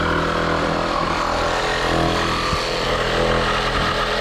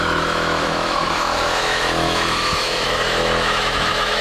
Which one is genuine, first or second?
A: first